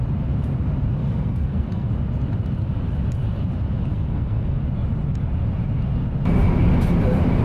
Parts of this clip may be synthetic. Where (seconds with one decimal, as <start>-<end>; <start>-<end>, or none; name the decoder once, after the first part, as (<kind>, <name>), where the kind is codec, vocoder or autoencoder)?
1.0-1.9 (codec, SNAC); 3.9-4.6